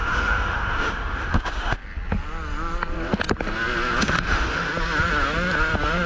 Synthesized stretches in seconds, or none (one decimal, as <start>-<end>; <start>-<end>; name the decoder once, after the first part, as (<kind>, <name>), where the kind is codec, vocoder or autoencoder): 0.0-1.8 (autoencoder, DAC-VAE); 4.0-4.7